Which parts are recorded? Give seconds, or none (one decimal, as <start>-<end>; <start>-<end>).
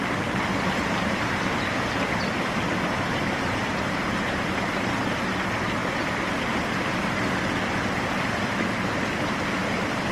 0.0-0.5; 4.9-10.1